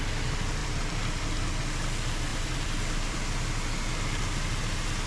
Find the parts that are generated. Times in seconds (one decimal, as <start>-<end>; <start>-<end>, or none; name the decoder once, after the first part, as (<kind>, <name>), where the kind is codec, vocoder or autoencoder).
0.6-1.4 (vocoder, BigVGAN v2); 2.3-3.2